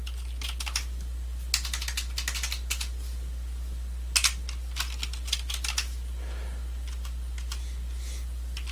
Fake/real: real